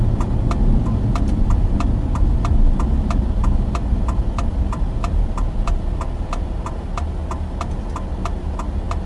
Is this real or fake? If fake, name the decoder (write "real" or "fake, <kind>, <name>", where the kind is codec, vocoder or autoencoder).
real